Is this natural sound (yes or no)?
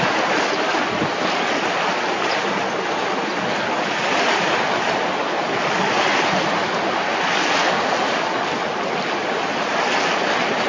yes